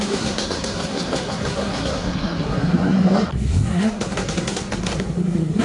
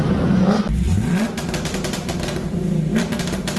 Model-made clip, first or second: first